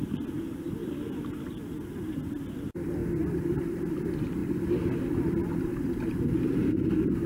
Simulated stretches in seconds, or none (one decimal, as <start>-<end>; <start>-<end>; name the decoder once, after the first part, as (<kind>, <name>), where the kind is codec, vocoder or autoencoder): 0.0-0.8 (vocoder, BigVGAN v2); 2.5-3.0; 3.8-4.4; 5.4-7.3